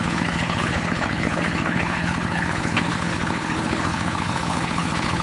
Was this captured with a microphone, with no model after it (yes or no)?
no